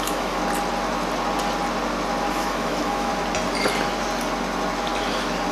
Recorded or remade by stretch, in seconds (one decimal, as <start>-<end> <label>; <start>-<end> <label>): 0.0-0.4 remade; 0.4-2.3 recorded; 2.3-3.1 remade; 3.1-5.5 recorded